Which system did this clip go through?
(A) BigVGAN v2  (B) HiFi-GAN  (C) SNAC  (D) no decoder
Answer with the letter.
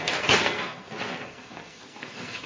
C